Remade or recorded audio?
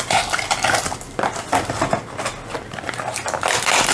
recorded